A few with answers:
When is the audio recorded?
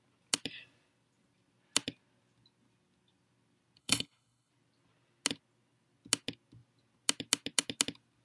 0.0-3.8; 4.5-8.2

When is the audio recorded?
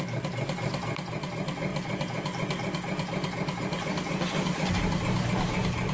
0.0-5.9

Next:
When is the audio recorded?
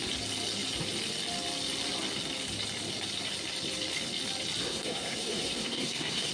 0.0-4.6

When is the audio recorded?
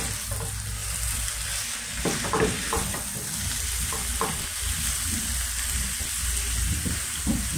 0.0-7.6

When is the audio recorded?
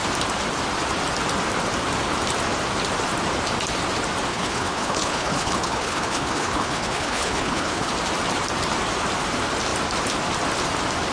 0.0-4.3; 7.9-11.1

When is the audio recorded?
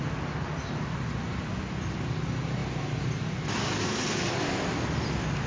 0.0-5.5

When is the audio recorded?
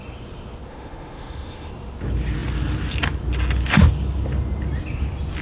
0.0-0.7; 1.7-5.4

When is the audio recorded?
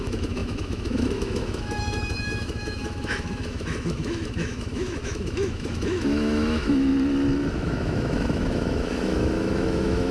6.9-7.5